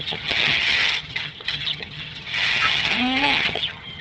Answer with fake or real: fake